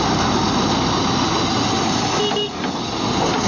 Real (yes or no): yes